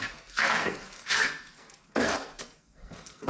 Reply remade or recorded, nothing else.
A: remade